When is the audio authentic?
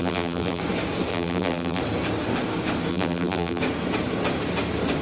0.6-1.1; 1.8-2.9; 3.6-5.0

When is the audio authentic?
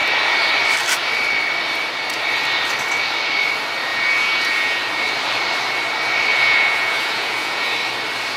0.0-3.9; 4.8-6.3; 7.7-8.4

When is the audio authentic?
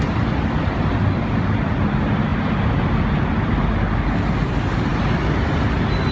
0.0-6.1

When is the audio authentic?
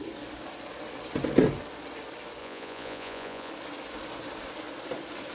0.0-2.4; 3.5-5.3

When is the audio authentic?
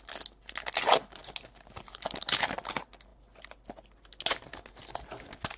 0.0-5.6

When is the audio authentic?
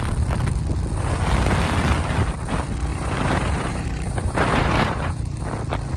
0.0-2.9; 5.4-6.0